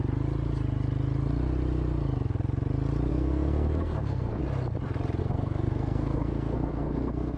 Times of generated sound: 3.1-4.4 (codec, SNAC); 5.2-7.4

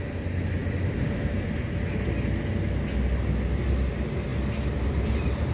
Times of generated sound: none

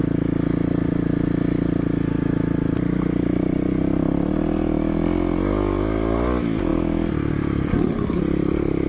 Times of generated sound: 7.7-8.2 (codec, SNAC)

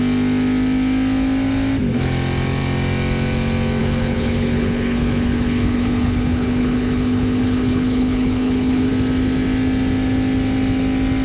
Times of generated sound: 3.8-8.9 (codec, HILCodec)

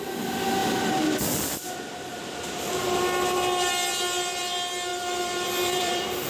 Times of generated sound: 4.9-6.3 (vocoder, BigVGAN v2)